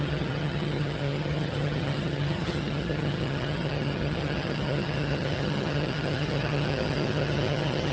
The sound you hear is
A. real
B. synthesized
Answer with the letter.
B